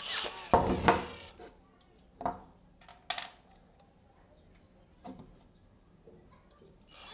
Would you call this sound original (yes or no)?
yes